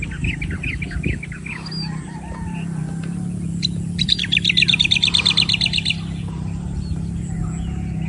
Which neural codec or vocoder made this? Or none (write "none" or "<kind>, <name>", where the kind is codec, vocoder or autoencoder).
none